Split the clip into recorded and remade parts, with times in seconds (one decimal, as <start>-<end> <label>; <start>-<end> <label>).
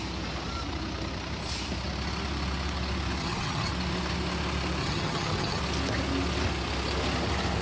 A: 0.0-3.2 recorded; 3.2-3.7 remade; 3.7-4.8 recorded; 4.8-5.6 remade; 5.6-7.6 recorded